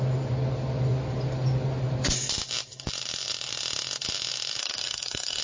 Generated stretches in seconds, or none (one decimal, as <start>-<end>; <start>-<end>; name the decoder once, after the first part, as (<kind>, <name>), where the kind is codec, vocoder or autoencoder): 4.6-5.4 (codec, SNAC)